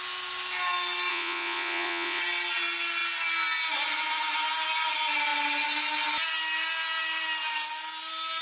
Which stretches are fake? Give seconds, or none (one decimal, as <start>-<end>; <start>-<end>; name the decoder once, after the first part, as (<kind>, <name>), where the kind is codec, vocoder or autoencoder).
1.1-2.2 (vocoder, Vocos)